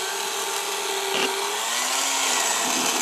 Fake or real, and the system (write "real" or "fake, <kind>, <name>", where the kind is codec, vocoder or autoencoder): real